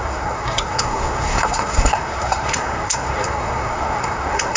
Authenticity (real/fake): fake